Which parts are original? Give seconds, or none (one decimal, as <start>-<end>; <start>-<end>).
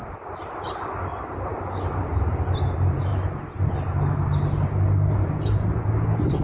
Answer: 0.0-6.4